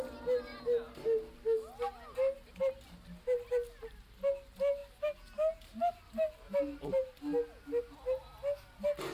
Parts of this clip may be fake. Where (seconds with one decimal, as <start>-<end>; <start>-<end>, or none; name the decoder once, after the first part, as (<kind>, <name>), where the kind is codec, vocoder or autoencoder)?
none